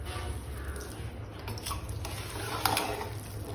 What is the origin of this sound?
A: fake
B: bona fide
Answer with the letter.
B